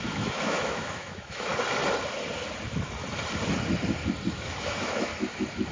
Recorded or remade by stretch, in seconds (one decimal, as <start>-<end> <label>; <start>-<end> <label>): 0.0-1.5 remade; 1.5-4.3 recorded; 4.3-5.1 remade; 5.1-5.7 recorded